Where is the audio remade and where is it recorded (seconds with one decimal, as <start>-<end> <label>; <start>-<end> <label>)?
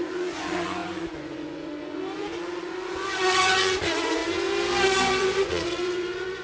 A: 0.0-4.2 remade; 4.2-5.0 recorded; 5.0-6.4 remade